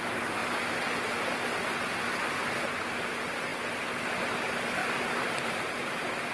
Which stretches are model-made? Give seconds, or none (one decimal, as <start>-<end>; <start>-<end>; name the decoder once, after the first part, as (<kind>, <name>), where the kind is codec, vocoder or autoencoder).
4.8-5.6 (vocoder, BigVGAN v2)